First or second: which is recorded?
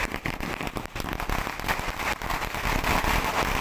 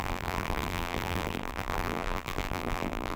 first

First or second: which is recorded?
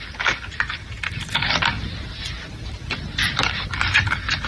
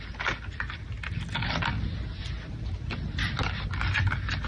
second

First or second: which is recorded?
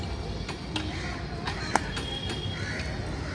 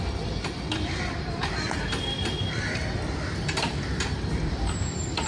first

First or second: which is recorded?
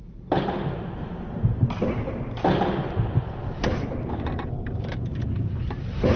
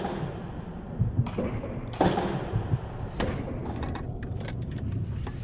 first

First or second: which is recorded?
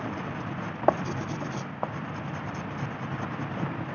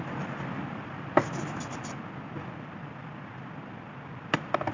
first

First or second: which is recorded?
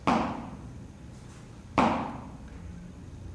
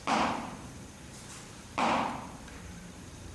first